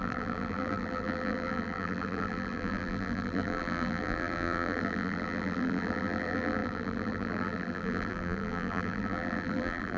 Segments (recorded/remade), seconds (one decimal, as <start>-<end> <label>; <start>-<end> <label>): 0.0-10.0 remade